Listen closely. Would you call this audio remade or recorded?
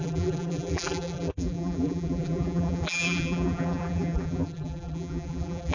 remade